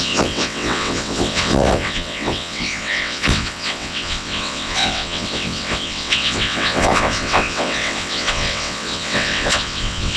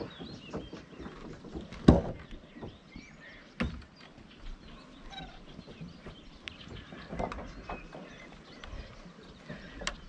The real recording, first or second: second